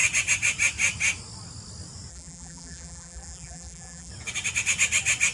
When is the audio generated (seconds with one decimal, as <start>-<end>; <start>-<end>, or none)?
2.1-4.1